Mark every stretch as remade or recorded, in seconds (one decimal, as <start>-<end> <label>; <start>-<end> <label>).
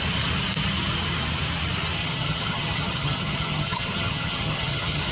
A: 0.0-2.0 recorded; 2.0-5.1 remade